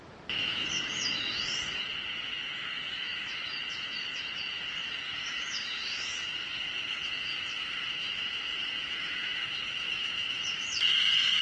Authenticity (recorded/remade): remade